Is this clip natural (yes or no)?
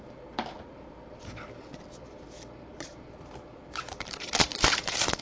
no